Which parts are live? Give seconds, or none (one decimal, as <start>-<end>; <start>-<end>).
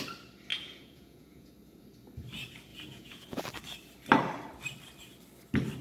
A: 0.0-0.5; 1.5-2.7; 3.4-5.8